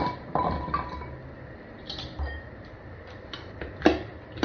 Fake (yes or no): yes